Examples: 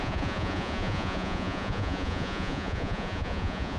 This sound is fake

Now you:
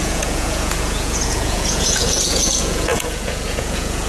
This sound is fake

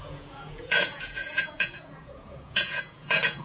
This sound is fake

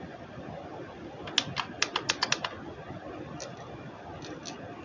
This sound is real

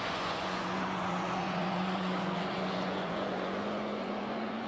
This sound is fake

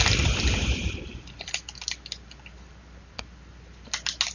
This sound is real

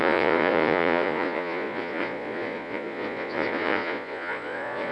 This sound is fake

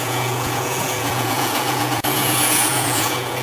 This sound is fake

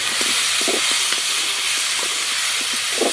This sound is real